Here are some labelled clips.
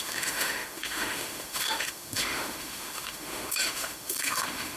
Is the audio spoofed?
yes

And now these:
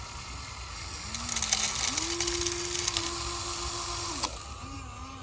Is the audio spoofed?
no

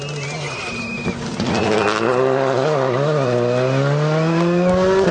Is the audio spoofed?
no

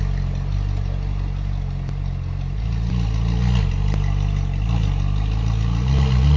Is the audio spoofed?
no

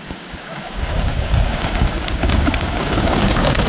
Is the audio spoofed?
yes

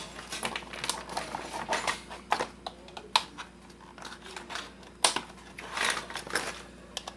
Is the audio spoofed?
no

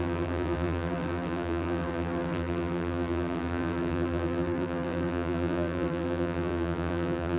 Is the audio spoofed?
yes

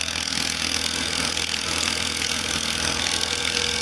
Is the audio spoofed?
yes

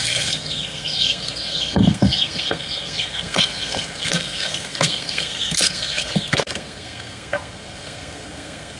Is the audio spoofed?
yes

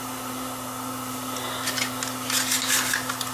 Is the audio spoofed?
no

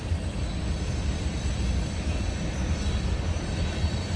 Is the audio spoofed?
no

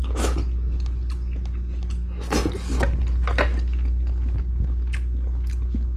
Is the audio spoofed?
no